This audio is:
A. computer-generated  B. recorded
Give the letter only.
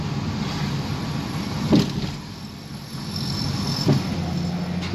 B